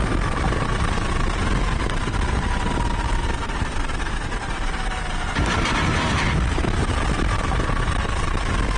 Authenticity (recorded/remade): remade